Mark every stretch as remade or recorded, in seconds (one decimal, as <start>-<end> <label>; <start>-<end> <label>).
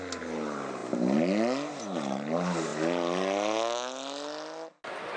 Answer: 0.0-5.2 recorded